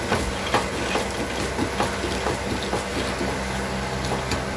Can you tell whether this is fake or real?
real